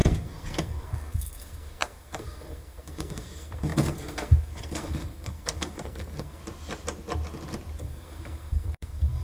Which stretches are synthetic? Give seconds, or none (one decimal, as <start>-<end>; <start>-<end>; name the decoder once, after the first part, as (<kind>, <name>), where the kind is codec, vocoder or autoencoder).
0.0-6.4 (codec, SNAC); 7.8-9.2